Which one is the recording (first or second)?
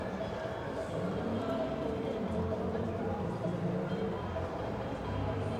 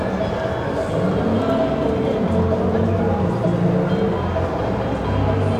second